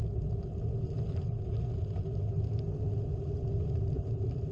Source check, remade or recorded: recorded